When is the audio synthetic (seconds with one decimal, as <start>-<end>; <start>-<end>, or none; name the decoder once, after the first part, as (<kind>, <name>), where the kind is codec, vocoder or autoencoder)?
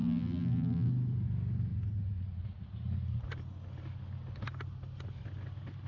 0.0-0.9 (vocoder, BigVGAN v2)